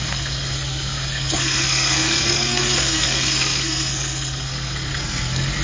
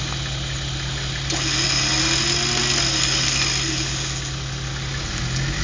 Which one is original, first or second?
second